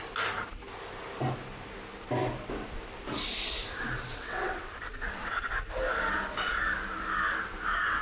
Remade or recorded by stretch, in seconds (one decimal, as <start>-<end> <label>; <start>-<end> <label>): 0.0-4.1 recorded; 4.1-5.4 remade; 5.4-8.0 recorded